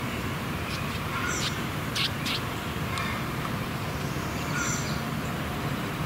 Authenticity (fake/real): fake